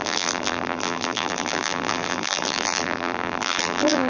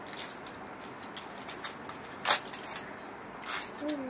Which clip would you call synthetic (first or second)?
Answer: first